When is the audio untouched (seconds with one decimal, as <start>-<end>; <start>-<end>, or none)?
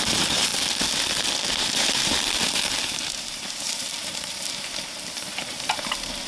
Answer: 0.5-1.6